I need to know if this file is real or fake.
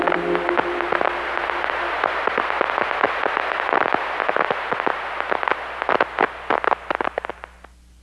real